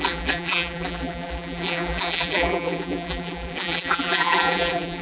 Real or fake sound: fake